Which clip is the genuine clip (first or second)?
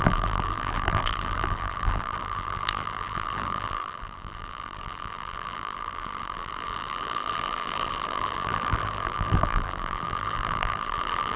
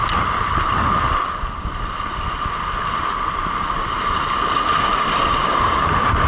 second